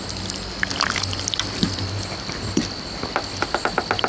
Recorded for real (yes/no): yes